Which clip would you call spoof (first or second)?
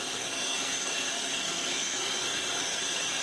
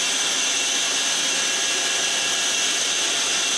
first